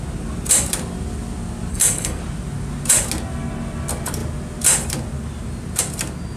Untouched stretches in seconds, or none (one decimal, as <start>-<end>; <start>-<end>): 0.0-1.7; 2.2-6.4